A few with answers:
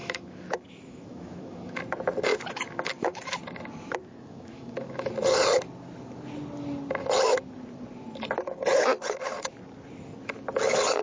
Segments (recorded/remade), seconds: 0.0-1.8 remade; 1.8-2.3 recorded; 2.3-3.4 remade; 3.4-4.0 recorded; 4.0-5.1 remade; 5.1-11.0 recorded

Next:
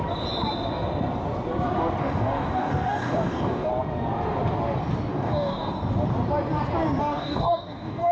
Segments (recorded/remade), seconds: 0.0-2.0 recorded; 2.0-3.7 remade; 3.7-5.1 recorded; 5.1-5.7 remade; 5.7-7.0 recorded; 7.0-8.1 remade

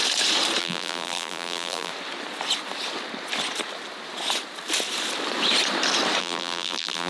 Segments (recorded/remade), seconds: 0.0-0.6 recorded; 0.6-1.9 remade; 1.9-6.2 recorded; 6.2-7.1 remade

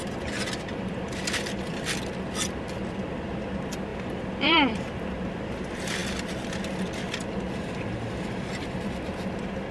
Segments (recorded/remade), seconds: 0.0-2.1 remade; 2.1-3.9 recorded; 3.9-5.5 remade; 5.5-9.7 recorded

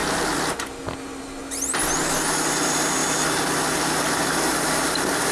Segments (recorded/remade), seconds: 0.0-5.3 recorded

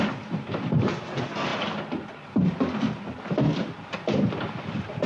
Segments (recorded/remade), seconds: 0.0-5.1 recorded